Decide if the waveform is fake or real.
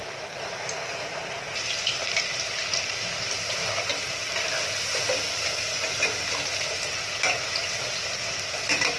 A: real